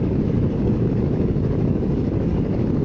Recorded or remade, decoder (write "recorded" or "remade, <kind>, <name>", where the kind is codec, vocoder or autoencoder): remade, codec, DAC